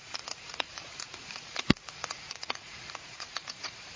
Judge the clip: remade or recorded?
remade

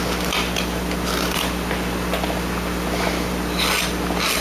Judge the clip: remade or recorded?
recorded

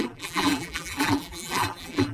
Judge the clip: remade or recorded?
remade